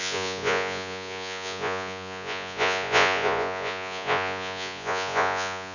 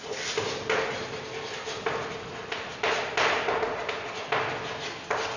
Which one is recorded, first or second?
second